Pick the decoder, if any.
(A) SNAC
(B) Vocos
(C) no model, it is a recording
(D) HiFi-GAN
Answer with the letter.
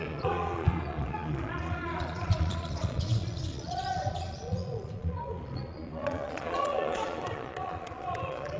B